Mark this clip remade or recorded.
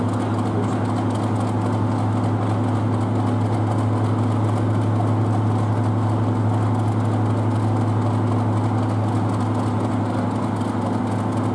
recorded